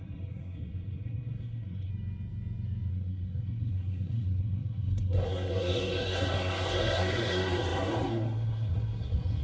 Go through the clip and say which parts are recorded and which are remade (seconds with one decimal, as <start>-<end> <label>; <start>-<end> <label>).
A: 0.0-1.9 remade; 1.9-2.9 recorded; 2.9-9.4 remade